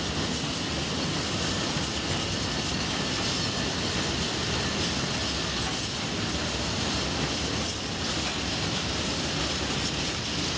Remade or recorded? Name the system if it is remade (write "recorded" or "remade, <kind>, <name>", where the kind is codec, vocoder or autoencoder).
recorded